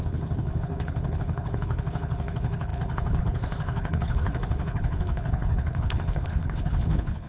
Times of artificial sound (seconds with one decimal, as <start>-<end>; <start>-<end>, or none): 0.0-7.3